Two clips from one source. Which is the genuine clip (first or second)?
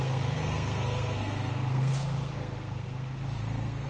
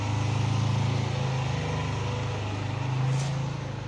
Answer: second